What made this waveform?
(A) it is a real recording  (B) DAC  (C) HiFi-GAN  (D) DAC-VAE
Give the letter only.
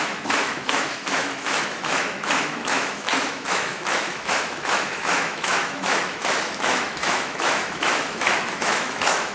D